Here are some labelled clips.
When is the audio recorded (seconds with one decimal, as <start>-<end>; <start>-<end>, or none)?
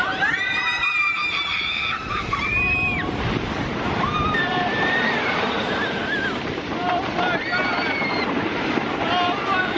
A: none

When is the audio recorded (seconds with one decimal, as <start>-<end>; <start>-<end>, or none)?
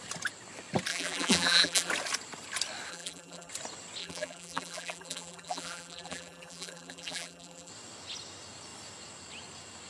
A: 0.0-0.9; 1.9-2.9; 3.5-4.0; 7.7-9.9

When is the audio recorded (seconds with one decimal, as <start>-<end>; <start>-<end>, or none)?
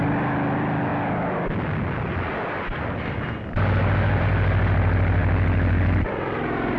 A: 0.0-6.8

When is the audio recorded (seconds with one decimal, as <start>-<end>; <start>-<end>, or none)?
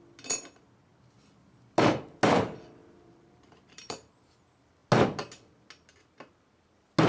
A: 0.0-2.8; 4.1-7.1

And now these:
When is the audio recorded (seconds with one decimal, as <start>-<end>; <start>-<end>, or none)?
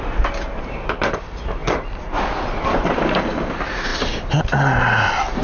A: 0.0-1.6; 3.5-5.4